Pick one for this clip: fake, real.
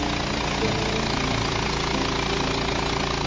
real